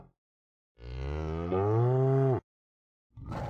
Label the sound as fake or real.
real